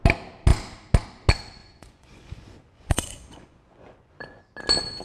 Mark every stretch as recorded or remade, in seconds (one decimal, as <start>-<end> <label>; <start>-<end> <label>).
0.0-1.6 recorded; 1.6-4.4 remade; 4.4-5.0 recorded

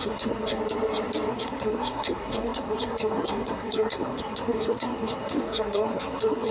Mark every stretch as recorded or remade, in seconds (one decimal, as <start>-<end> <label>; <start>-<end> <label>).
0.0-0.6 remade; 0.6-1.3 recorded; 1.3-6.5 remade

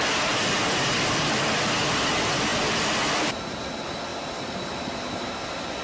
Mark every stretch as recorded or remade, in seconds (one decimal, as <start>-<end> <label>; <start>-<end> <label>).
0.0-5.8 recorded

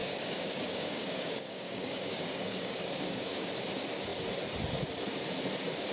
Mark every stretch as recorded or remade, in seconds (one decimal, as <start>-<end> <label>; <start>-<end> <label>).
0.0-3.5 remade; 3.5-5.9 recorded